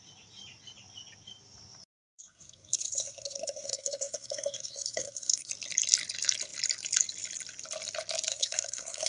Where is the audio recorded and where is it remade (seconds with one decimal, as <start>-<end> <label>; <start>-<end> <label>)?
0.0-1.8 recorded; 1.8-5.5 remade; 5.5-8.3 recorded; 8.3-9.1 remade